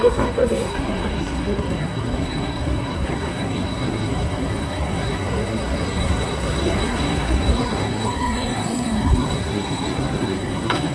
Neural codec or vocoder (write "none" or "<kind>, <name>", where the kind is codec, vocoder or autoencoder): codec, SNAC